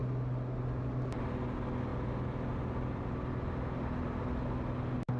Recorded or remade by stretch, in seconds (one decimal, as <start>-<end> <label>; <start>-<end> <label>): 0.0-5.2 recorded